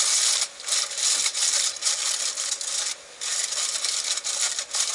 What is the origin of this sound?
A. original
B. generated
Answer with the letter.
A